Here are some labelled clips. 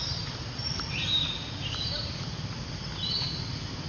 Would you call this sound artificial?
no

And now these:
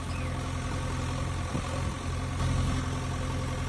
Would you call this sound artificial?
no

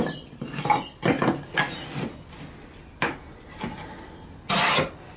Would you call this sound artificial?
no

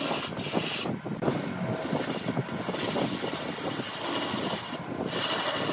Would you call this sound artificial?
no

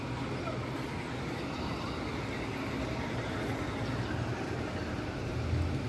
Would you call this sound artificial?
no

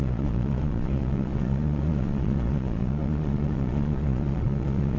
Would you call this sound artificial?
yes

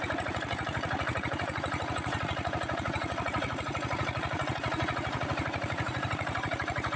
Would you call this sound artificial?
yes